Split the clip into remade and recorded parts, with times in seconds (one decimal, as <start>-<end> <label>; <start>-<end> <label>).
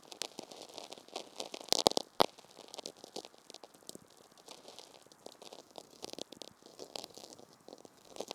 0.0-5.6 recorded; 5.6-6.2 remade; 6.2-6.7 recorded; 6.7-8.3 remade